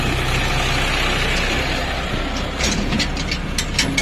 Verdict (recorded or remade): recorded